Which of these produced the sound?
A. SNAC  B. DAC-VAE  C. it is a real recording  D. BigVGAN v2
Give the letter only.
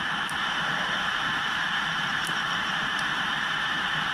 D